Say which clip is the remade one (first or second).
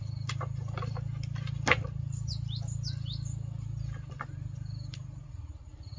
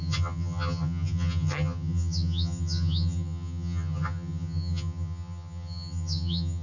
second